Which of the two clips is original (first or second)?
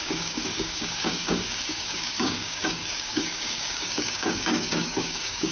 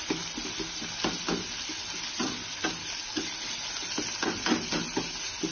second